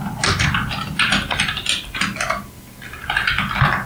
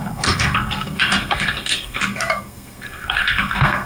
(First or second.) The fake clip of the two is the second